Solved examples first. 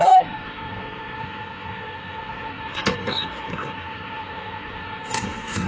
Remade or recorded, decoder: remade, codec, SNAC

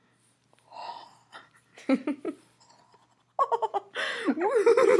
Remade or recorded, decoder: recorded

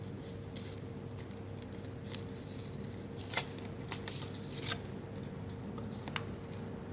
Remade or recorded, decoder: recorded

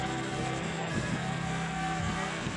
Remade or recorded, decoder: remade, codec, SNAC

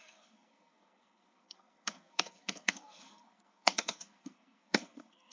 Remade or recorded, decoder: remade, codec, SNAC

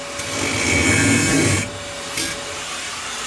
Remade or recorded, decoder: recorded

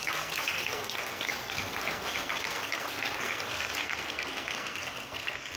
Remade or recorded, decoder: remade, codec, SNAC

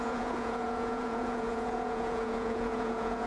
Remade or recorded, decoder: remade, vocoder, Vocos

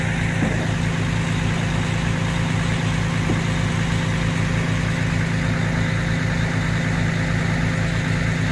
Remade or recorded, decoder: recorded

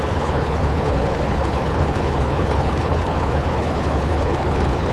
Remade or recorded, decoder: remade, codec, HILCodec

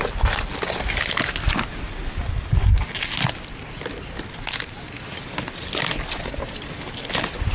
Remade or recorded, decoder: recorded